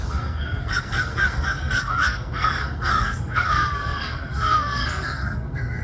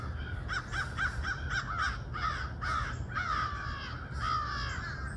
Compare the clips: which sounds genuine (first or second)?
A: second